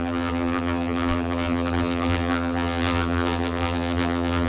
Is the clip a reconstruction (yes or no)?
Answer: yes